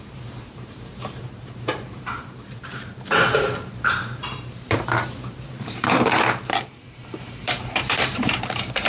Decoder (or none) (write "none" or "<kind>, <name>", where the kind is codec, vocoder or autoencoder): vocoder, BigVGAN v2